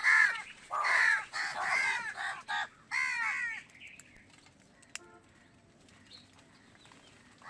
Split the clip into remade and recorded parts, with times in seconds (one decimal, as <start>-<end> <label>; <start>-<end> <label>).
0.0-2.5 remade; 2.5-7.5 recorded